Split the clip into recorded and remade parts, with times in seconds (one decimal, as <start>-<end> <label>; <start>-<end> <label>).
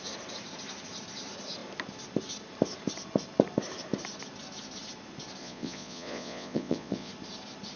0.0-5.4 recorded; 5.4-7.1 remade; 7.1-7.8 recorded